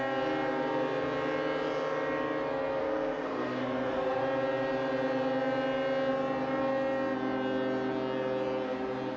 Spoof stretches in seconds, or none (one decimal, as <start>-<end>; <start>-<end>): 2.8-4.2